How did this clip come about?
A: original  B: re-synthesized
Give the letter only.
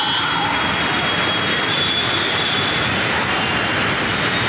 A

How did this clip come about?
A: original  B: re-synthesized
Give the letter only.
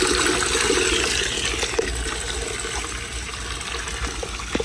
A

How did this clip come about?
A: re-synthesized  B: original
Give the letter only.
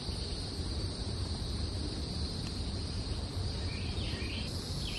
B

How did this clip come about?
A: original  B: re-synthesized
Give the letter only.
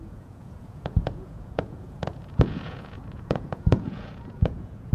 B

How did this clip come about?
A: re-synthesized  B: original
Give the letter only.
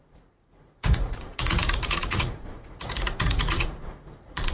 A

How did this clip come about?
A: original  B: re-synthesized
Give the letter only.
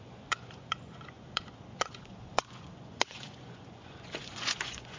B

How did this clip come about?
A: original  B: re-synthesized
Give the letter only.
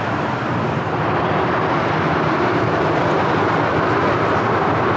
A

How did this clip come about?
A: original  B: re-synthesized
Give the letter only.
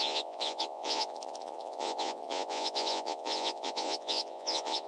B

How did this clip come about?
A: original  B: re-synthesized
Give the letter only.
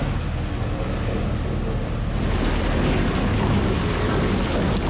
A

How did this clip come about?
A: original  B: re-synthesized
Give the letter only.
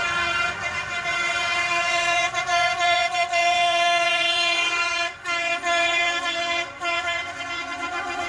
B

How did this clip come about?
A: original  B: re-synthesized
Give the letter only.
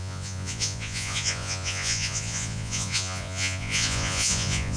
B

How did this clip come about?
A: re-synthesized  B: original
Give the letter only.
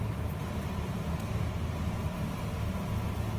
B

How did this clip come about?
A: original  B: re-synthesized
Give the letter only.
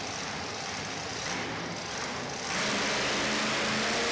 A